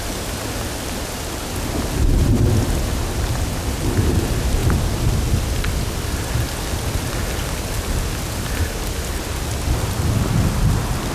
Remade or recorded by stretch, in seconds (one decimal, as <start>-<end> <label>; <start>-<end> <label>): 0.0-11.1 recorded